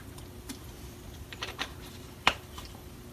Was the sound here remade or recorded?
remade